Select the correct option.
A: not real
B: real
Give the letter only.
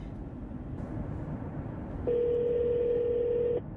B